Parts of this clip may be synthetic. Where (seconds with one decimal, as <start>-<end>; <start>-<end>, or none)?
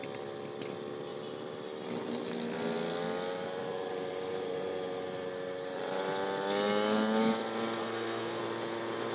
7.8-8.4